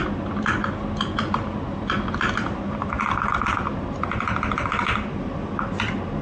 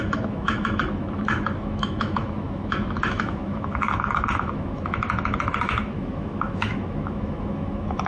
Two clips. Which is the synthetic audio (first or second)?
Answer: second